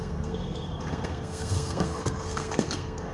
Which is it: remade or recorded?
remade